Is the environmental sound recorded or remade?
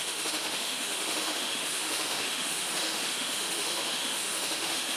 remade